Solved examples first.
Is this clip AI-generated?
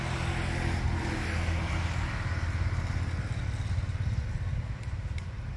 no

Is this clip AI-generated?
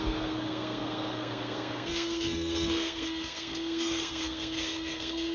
yes